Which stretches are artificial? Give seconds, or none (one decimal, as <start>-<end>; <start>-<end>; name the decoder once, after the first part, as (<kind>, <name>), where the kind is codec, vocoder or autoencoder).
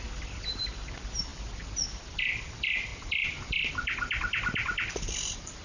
0.0-1.3 (vocoder, BigVGAN v2); 2.4-5.6